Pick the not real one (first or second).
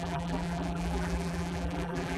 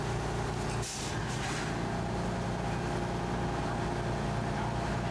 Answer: first